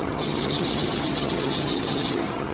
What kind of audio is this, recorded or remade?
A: remade